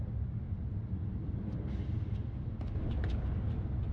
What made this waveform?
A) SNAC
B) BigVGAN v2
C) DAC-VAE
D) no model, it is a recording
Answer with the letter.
D